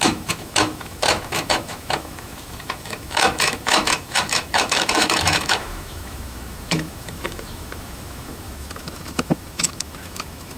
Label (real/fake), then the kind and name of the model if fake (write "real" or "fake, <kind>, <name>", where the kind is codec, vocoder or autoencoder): fake, autoencoder, DAC-VAE